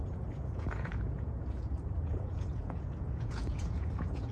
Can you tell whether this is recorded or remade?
remade